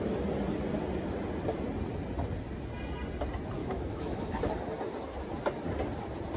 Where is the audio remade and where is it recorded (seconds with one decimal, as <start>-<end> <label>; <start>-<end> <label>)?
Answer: 0.0-3.6 recorded; 3.6-4.4 remade; 4.4-6.4 recorded